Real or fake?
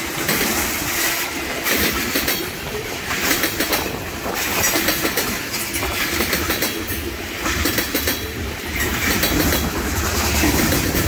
fake